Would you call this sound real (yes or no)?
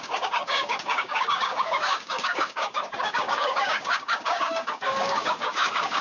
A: no